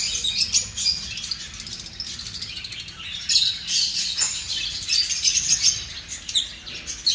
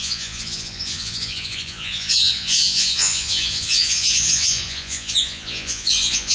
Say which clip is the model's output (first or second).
second